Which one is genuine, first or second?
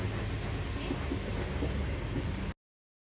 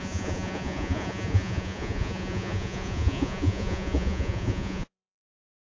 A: first